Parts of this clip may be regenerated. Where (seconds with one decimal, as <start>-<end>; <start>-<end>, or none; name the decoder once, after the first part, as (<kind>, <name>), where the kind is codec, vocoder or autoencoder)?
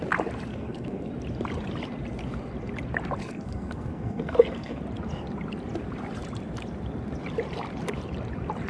0.5-1.1 (codec, SNAC); 3.2-4.8